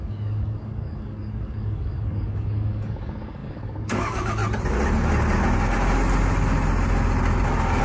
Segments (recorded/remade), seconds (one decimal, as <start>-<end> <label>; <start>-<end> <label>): 0.0-4.4 remade; 4.4-7.8 recorded